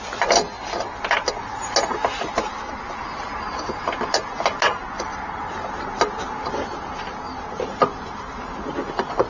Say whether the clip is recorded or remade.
recorded